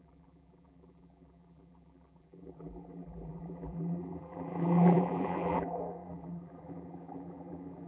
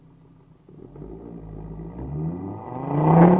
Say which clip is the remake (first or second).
first